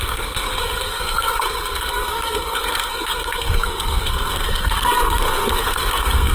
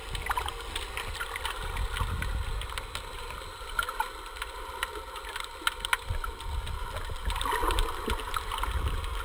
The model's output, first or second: first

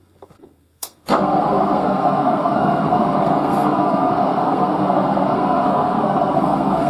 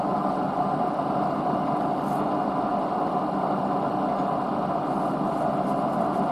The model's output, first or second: first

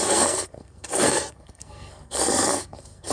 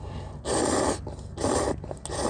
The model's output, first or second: first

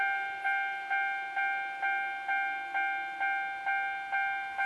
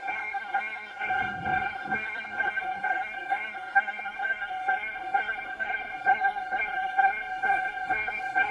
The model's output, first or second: second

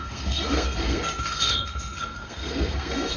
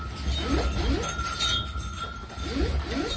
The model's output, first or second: first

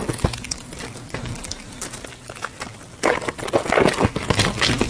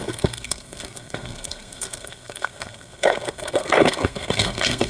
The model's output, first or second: second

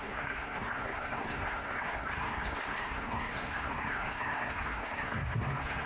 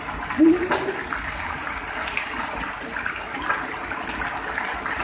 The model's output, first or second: first